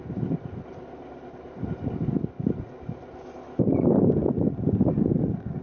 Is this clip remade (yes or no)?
no